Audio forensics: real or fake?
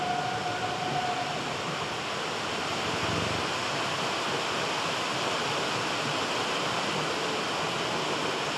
real